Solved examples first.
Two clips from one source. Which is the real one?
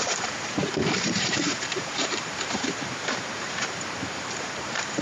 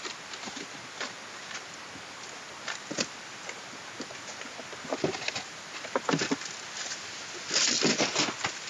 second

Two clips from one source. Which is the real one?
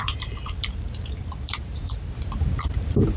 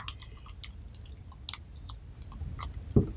second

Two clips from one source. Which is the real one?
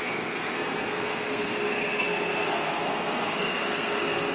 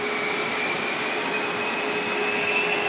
second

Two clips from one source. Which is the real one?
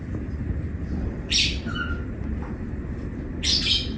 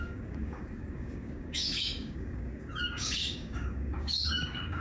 first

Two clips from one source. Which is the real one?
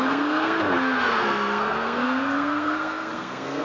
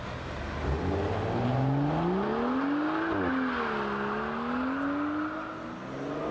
second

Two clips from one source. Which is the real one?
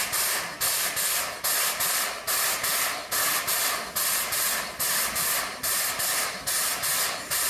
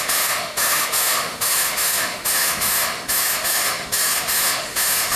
first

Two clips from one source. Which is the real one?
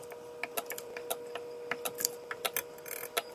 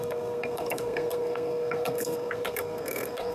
first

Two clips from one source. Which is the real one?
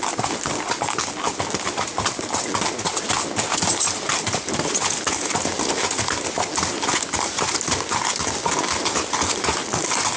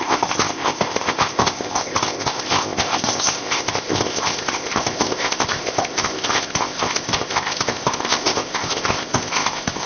first